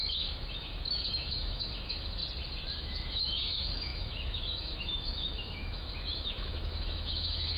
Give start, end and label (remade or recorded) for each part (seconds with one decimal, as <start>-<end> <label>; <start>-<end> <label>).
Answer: 0.0-2.2 remade; 2.2-2.8 recorded; 2.8-7.6 remade